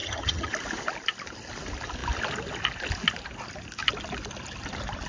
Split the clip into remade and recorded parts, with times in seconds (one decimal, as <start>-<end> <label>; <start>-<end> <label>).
0.0-0.5 remade; 0.5-5.1 recorded